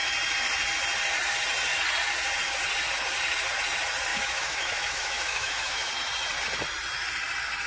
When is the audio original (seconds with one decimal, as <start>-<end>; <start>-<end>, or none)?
0.0-4.1; 5.9-7.7